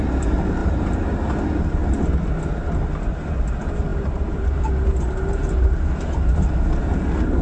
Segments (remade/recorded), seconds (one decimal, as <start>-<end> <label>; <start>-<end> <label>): 0.0-0.6 recorded; 0.6-1.3 remade; 1.3-3.9 recorded; 3.9-4.4 remade; 4.4-7.4 recorded